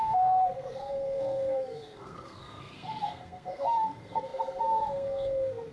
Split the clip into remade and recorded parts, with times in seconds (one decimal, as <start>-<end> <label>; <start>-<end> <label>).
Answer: 0.0-5.7 remade